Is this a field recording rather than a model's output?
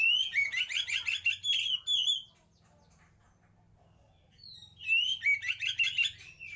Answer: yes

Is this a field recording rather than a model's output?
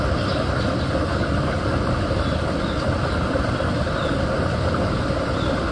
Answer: yes